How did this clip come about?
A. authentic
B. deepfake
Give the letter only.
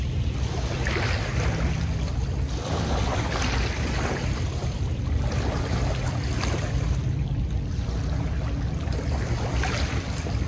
A